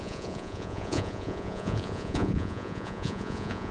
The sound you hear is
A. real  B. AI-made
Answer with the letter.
B